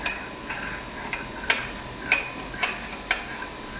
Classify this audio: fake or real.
real